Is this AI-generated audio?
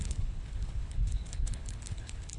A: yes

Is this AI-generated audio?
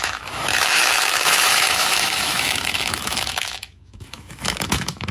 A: yes